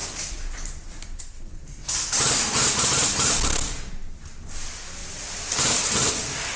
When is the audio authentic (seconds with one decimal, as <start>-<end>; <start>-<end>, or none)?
0.0-6.6